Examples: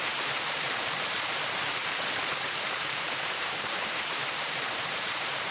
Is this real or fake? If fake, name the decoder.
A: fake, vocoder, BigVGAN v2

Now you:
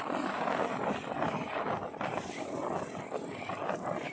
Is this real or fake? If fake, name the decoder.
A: real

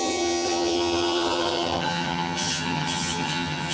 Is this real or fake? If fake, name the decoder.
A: fake, vocoder, HiFi-GAN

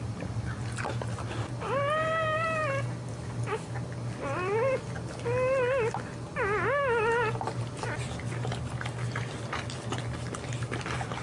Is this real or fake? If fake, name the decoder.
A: real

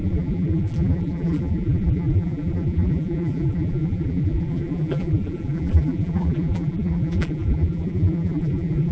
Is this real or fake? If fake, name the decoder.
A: fake, vocoder, BigVGAN v2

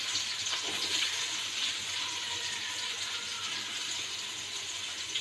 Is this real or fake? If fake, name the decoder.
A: fake, vocoder, Vocos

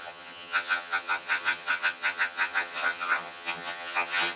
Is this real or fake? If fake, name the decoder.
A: fake, vocoder, HiFi-GAN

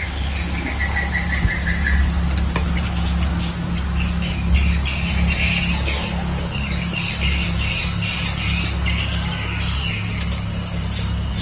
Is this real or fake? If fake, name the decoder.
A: real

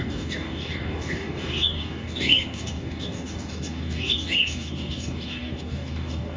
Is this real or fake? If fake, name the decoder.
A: fake, codec, DAC